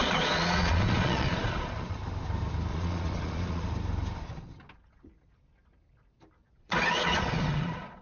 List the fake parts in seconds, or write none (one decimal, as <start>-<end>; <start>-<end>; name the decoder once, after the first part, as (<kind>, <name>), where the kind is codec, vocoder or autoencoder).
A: 0.0-2.0 (vocoder, Vocos); 2.7-3.7; 6.4-8.0